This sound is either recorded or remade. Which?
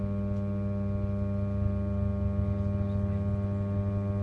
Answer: recorded